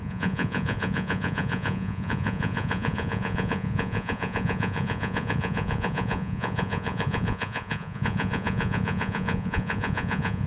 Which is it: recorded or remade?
remade